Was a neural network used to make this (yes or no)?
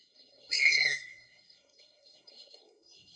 yes